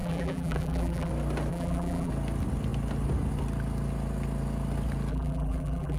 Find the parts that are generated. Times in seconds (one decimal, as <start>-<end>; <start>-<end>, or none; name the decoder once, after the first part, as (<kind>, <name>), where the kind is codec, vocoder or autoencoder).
0.0-1.1 (vocoder, BigVGAN v2); 1.5-2.1; 5.1-6.0